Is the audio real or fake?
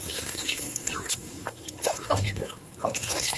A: fake